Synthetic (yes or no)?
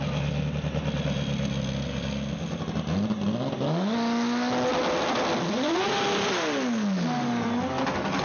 no